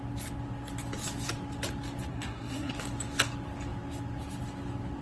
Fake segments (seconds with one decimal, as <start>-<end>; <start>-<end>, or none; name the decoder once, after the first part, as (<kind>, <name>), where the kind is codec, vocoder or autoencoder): 2.1-2.7 (codec, SNAC)